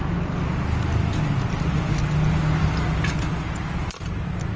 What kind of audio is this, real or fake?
real